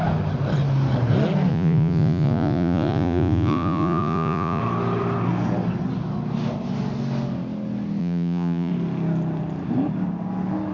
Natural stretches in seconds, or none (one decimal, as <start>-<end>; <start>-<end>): 0.0-1.5; 4.6-8.0; 8.7-10.7